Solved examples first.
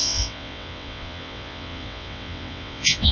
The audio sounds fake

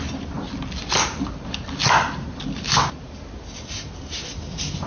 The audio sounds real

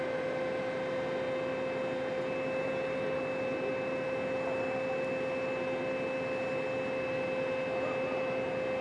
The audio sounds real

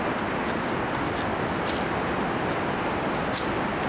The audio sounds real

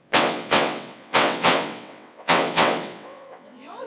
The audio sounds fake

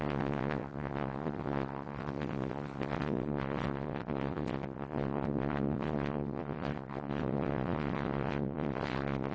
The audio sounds fake